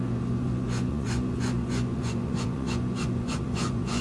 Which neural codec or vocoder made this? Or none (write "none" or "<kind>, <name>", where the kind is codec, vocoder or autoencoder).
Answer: vocoder, Vocos